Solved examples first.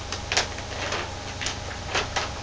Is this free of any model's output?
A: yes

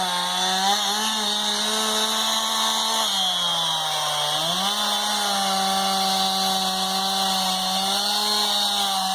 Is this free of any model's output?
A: yes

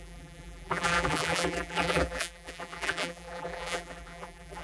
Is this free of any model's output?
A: no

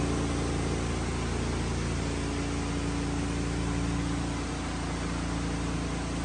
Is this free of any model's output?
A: yes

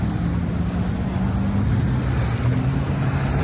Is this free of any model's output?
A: yes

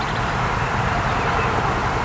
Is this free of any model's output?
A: yes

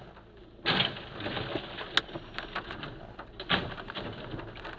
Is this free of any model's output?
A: yes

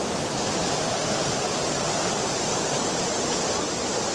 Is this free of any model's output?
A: yes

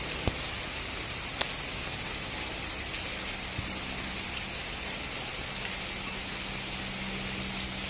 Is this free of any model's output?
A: yes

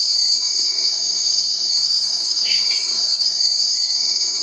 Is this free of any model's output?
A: no